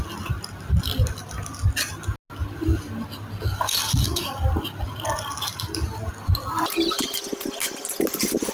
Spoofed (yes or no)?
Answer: no